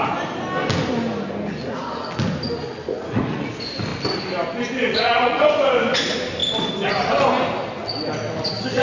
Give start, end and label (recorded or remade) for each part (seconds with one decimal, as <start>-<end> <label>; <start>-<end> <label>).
0.0-2.9 recorded; 2.9-3.5 remade; 3.5-4.9 recorded; 4.9-5.4 remade; 5.4-8.8 recorded